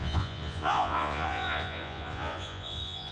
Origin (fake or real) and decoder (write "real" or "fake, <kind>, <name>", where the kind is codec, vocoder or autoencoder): fake, vocoder, Vocos